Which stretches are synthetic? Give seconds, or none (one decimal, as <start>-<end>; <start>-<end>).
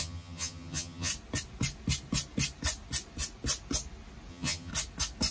0.0-1.1; 4.3-4.7